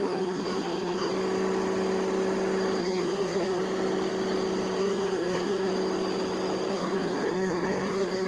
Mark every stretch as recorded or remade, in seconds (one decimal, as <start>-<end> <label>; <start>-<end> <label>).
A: 0.0-1.1 remade; 1.1-2.8 recorded; 2.8-3.6 remade; 3.6-4.8 recorded; 4.8-5.7 remade; 5.7-6.7 recorded; 6.7-8.3 remade